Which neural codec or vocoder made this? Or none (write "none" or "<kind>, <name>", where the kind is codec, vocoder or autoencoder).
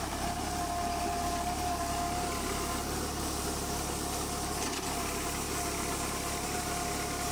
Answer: none